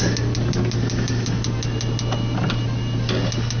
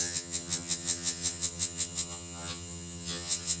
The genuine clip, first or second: first